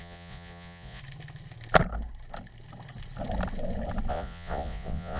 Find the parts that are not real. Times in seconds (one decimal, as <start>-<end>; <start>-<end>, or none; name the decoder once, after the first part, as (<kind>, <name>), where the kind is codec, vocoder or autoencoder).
0.0-1.0 (vocoder, Vocos); 4.1-5.2

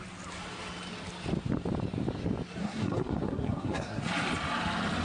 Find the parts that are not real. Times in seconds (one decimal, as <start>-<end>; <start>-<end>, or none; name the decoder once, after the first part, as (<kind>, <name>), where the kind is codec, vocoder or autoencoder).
2.6-4.0 (codec, SNAC)

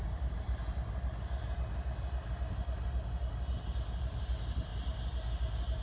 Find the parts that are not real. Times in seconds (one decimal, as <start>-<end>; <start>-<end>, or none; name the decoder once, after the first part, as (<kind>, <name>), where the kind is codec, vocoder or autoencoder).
0.0-0.6 (vocoder, BigVGAN v2); 4.0-4.7

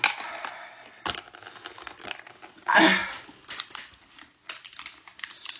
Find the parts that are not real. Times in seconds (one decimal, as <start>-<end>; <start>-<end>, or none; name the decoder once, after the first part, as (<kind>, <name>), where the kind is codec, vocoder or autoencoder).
none